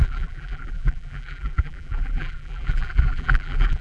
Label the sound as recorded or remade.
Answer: remade